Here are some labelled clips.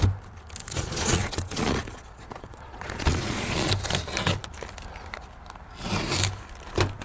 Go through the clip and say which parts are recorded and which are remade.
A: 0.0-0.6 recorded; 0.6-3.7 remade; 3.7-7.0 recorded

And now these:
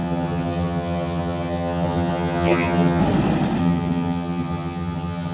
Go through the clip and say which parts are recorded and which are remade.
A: 0.0-3.0 remade; 3.0-3.6 recorded; 3.6-5.3 remade

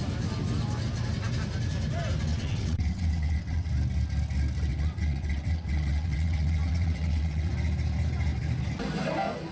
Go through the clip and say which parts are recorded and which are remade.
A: 0.0-2.3 recorded; 2.3-3.7 remade; 3.7-4.7 recorded; 4.7-7.5 remade; 7.5-9.5 recorded

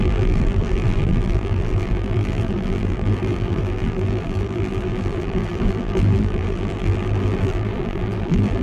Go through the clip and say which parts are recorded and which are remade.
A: 0.0-8.6 remade

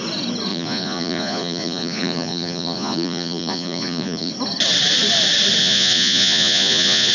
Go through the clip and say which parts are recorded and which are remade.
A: 0.0-0.5 recorded; 0.5-4.3 remade; 4.3-5.6 recorded; 5.6-7.1 remade